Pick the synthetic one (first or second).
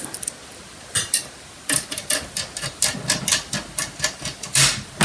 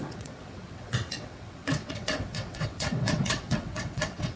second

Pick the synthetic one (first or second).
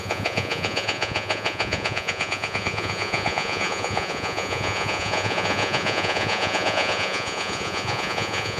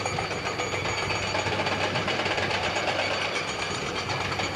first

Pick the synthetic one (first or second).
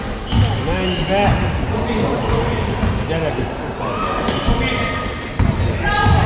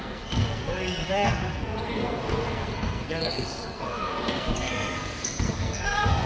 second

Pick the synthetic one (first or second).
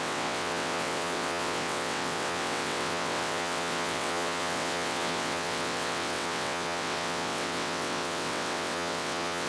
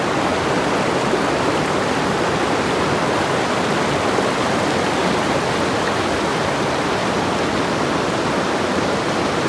first